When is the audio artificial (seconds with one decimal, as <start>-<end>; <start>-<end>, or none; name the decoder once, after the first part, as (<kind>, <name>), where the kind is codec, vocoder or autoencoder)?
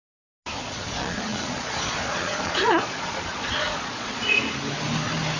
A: 0.6-4.4 (vocoder, Vocos)